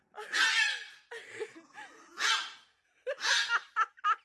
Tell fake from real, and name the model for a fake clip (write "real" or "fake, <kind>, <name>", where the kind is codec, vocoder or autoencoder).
real